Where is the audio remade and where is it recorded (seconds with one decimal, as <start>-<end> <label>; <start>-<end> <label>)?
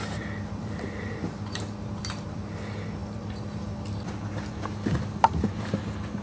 0.0-6.2 remade